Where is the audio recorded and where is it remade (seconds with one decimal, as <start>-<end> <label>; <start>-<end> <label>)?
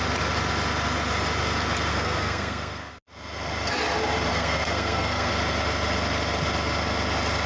0.0-1.9 recorded; 1.9-2.9 remade; 2.9-4.3 recorded; 4.3-5.3 remade; 5.3-7.5 recorded